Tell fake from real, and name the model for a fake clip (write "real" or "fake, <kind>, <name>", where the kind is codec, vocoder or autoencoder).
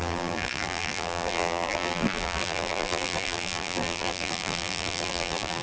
fake, vocoder, BigVGAN v2